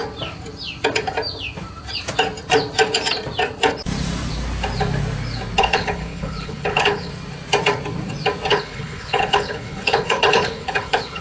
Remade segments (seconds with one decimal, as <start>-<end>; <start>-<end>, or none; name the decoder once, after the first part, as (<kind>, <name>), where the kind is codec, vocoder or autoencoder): 5.6-7.1 (codec, HILCodec); 8.5-11.2